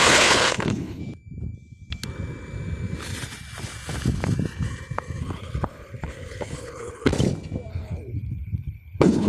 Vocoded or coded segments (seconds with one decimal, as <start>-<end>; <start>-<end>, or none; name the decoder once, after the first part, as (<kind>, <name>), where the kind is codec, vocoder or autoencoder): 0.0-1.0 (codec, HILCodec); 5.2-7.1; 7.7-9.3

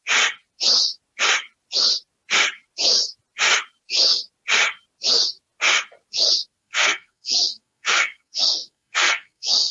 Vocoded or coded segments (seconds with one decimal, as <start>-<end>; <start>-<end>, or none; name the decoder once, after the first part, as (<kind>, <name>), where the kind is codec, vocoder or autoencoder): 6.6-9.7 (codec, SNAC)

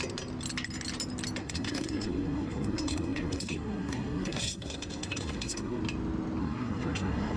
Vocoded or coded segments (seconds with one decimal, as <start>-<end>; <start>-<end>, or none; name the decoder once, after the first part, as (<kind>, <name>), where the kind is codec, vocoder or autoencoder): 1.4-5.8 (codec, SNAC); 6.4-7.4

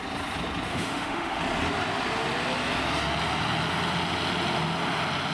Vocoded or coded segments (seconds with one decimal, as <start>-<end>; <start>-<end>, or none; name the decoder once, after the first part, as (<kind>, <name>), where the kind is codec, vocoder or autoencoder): 0.7-1.4 (autoencoder, DAC-VAE)

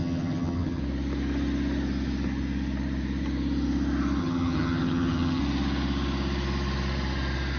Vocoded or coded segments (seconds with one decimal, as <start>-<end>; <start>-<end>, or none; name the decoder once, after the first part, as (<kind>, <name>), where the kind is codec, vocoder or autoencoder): 0.0-0.8 (vocoder, HiFi-GAN); 4.2-5.4

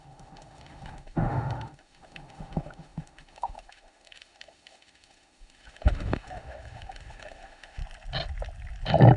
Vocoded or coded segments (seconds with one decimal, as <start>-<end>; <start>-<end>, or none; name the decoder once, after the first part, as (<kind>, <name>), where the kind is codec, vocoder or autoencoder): 0.0-7.8 (autoencoder, DAC-VAE)

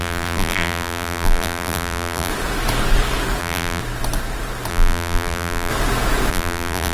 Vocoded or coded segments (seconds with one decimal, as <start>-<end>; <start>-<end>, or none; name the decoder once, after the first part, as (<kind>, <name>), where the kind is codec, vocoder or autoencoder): 0.0-2.3 (vocoder, BigVGAN v2); 3.4-3.8; 4.7-5.7; 6.3-6.9